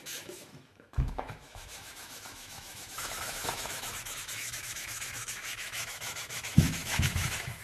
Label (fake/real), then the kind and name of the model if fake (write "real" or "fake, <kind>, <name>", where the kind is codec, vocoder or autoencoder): fake, autoencoder, DAC-VAE